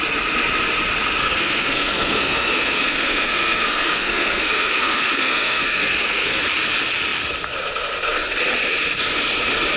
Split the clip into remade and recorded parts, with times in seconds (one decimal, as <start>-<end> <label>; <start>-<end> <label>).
0.0-1.2 recorded; 1.2-6.4 remade; 6.4-9.8 recorded